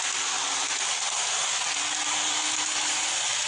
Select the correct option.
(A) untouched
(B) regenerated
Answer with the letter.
A